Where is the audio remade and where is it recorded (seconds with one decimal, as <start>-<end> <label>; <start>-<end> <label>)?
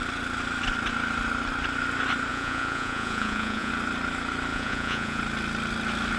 0.0-2.3 recorded; 2.3-3.7 remade; 3.7-4.5 recorded; 4.5-5.2 remade; 5.2-6.2 recorded